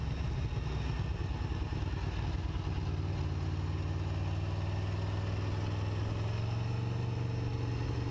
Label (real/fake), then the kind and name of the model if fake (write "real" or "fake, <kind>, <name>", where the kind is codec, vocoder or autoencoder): real